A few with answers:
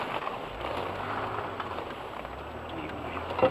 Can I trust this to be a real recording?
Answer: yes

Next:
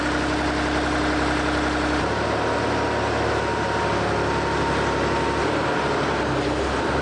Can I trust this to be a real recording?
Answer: yes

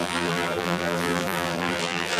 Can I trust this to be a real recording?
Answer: no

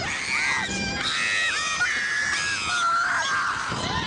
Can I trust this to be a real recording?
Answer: yes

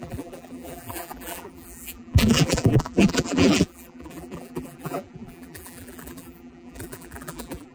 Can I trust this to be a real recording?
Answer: no